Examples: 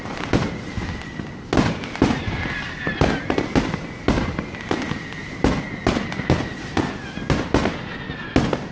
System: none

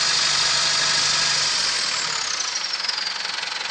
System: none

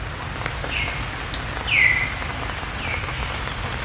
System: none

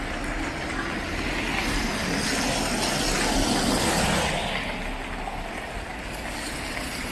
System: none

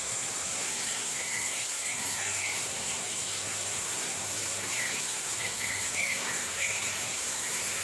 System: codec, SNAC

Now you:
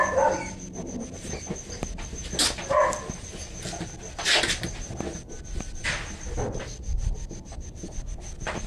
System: none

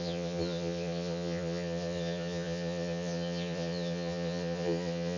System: vocoder, Vocos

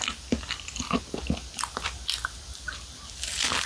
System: none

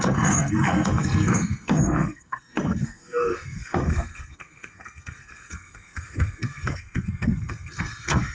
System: codec, SNAC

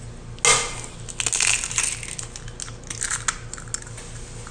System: none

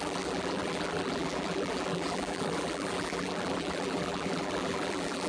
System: vocoder, BigVGAN v2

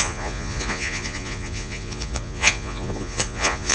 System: vocoder, Vocos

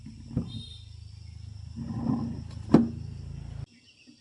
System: none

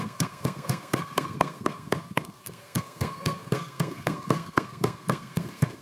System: codec, SNAC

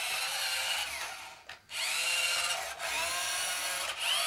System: none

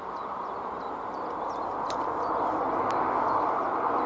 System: none